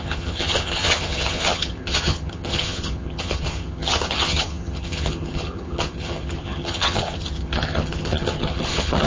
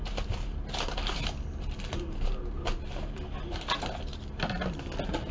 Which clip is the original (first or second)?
second